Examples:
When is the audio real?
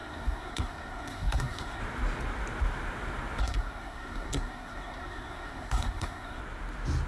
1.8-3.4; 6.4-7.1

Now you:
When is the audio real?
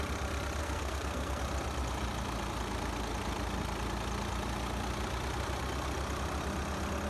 0.0-0.6; 1.4-7.1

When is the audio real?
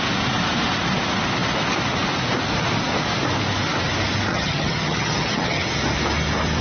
0.0-4.3; 5.7-6.6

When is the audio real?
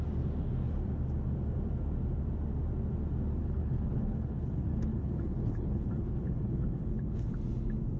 0.0-3.4; 7.3-8.0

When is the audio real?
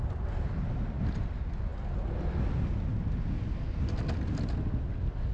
0.0-5.3